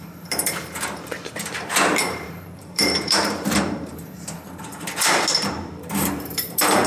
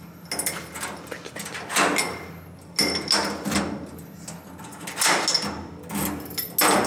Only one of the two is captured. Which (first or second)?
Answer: second